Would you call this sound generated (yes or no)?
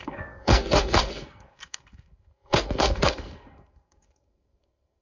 yes